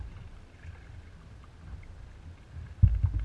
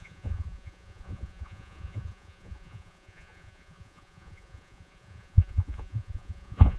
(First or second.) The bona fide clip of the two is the first